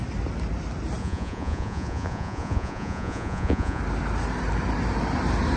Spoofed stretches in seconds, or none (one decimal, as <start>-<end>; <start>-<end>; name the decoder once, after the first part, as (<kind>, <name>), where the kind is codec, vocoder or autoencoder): 1.0-3.8 (vocoder, Vocos)